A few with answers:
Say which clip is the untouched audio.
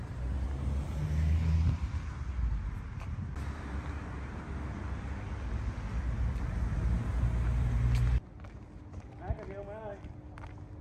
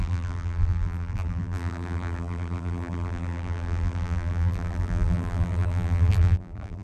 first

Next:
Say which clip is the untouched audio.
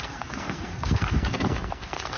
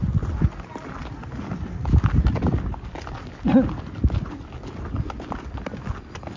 second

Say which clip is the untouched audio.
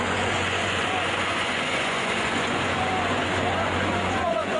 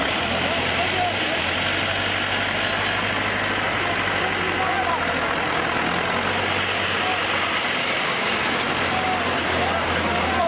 second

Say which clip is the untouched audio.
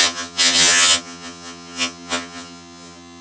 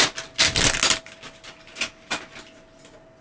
second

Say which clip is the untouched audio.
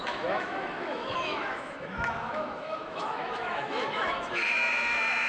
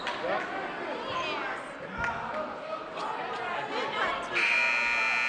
second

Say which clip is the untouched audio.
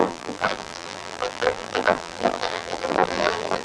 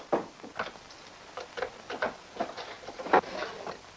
second